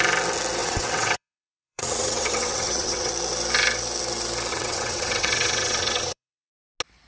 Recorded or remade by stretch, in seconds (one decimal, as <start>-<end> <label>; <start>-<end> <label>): 0.0-0.6 recorded; 0.6-3.1 remade; 3.1-4.5 recorded; 4.5-6.5 remade; 6.5-7.1 recorded